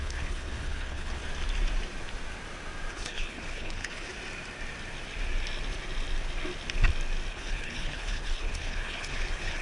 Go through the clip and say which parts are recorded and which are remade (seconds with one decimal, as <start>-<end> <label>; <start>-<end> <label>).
0.0-1.2 remade; 1.2-2.9 recorded; 2.9-4.1 remade; 4.1-7.3 recorded; 7.3-9.6 remade